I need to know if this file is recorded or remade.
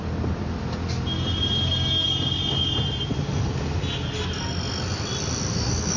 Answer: recorded